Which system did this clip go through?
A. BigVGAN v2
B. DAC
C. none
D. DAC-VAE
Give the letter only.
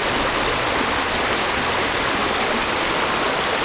C